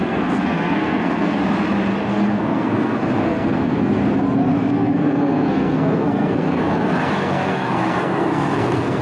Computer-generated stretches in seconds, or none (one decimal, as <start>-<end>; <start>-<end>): 0.0-1.4; 2.1-4.0; 4.7-9.0

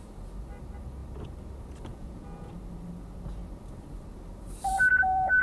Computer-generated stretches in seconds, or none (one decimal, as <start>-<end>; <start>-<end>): 1.9-2.5

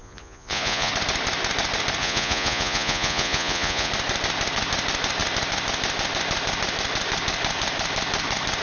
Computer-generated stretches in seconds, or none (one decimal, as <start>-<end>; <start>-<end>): 0.0-0.9; 2.0-3.9

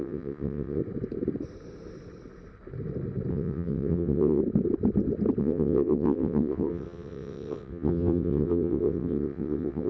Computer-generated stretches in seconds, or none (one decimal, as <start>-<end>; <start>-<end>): 0.0-0.8; 3.3-4.4; 5.4-9.9

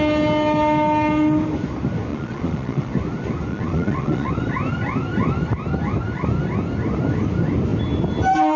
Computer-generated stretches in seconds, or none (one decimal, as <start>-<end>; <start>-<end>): 2.1-2.9; 3.5-4.3

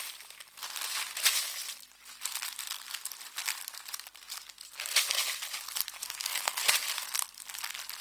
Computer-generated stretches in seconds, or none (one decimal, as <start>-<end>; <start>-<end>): 6.0-6.6

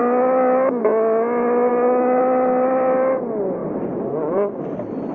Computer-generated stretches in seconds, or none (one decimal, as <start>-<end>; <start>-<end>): 1.7-2.2

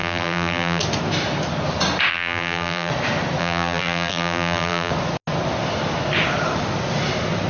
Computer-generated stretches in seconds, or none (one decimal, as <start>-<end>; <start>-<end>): 0.0-0.8; 2.1-2.9; 3.4-4.9